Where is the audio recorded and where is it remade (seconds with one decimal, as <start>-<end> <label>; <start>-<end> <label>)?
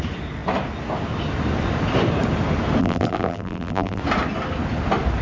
0.0-2.8 recorded; 2.8-4.0 remade; 4.0-5.2 recorded